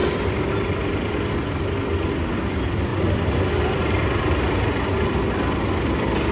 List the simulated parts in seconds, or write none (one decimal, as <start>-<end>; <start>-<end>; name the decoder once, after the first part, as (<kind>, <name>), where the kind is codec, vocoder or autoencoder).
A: none